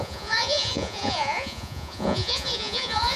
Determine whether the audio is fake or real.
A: fake